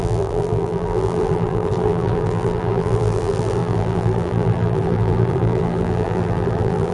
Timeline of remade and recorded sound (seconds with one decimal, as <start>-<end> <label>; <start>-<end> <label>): 0.0-6.9 remade